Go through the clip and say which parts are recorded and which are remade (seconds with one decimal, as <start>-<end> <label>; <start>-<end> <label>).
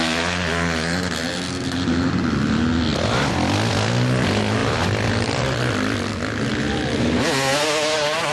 0.0-2.9 recorded; 2.9-3.7 remade; 3.7-4.6 recorded; 4.6-5.6 remade; 5.6-6.5 recorded; 6.5-7.2 remade; 7.2-8.3 recorded